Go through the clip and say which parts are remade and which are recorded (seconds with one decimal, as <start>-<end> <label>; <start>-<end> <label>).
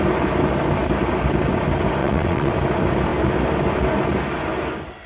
0.0-2.0 recorded; 2.0-2.5 remade; 2.5-5.1 recorded